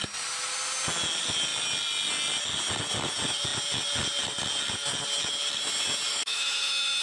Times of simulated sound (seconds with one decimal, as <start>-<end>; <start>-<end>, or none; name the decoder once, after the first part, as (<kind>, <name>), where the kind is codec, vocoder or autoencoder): 6.1-7.0 (autoencoder, DAC-VAE)

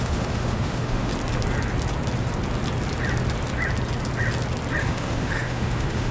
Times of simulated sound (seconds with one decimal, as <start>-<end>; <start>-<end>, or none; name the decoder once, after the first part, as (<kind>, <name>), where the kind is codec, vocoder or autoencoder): 0.0-1.1 (autoencoder, DAC-VAE); 4.8-6.1

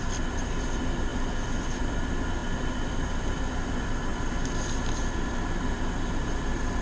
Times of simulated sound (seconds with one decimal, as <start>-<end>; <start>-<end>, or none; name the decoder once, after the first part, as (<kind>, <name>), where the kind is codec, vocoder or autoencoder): none

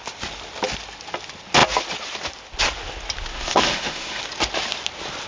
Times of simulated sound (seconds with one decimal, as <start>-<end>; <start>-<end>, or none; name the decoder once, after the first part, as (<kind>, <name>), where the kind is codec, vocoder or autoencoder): 3.3-4.2 (autoencoder, DAC-VAE)

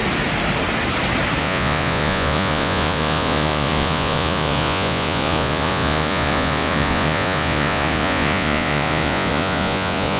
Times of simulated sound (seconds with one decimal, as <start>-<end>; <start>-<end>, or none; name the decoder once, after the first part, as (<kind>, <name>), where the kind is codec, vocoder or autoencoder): 1.4-10.2 (vocoder, Vocos)

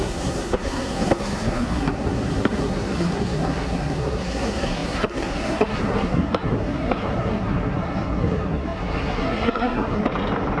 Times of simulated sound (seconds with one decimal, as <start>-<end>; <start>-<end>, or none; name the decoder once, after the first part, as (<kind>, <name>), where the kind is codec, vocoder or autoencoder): 0.0-10.0 (codec, SNAC)